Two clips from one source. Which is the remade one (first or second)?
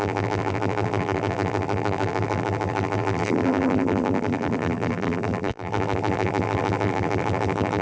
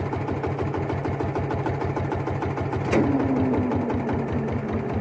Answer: first